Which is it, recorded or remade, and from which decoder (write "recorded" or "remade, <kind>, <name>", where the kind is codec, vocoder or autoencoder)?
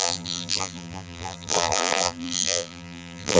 remade, vocoder, BigVGAN v2